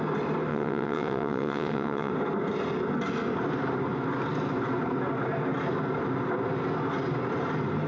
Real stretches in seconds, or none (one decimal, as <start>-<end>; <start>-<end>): 0.0-0.5; 2.1-7.9